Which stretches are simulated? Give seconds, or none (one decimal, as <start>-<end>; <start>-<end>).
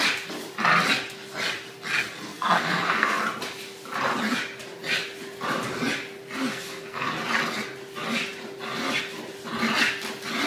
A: 2.3-3.2; 6.5-7.1